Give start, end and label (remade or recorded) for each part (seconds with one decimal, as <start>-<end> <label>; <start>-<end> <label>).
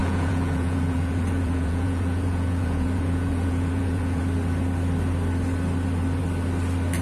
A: 0.0-4.2 remade; 4.2-7.0 recorded